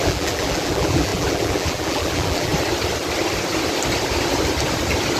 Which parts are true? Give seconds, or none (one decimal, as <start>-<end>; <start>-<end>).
2.5-5.2